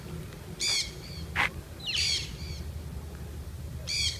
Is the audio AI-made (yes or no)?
no